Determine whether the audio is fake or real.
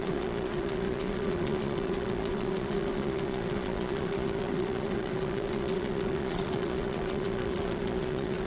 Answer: fake